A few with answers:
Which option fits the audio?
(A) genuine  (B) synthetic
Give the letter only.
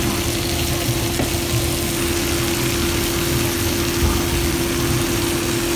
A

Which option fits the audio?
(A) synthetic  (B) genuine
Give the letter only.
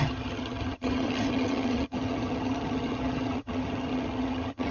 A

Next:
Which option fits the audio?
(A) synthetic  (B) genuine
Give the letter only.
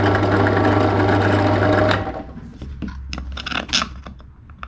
B